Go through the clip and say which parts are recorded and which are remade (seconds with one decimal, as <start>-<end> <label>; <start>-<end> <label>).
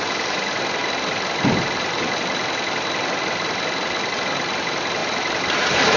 0.0-5.0 recorded; 5.0-6.0 remade